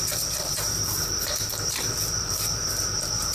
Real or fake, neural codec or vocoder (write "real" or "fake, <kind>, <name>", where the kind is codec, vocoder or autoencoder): fake, vocoder, BigVGAN v2